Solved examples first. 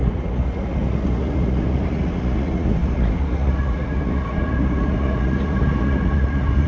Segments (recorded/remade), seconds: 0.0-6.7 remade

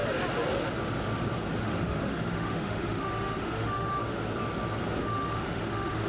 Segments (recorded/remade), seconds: 0.0-1.6 recorded; 1.6-4.0 remade; 4.0-5.0 recorded; 5.0-6.1 remade

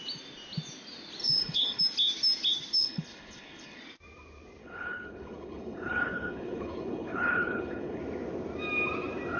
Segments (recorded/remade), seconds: 0.0-1.2 recorded; 1.2-1.8 remade; 1.8-2.7 recorded; 2.7-3.8 remade; 3.8-4.6 recorded; 4.6-8.0 remade; 8.0-9.4 recorded

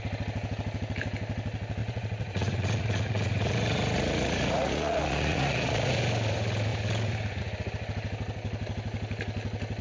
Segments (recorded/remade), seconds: 0.0-1.8 recorded; 1.8-6.0 remade; 6.0-9.8 recorded

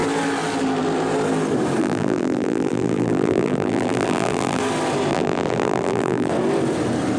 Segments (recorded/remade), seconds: 0.0-1.8 recorded; 1.8-4.6 remade; 4.6-5.1 recorded; 5.1-6.3 remade; 6.3-7.2 recorded